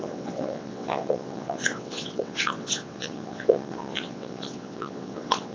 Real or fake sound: fake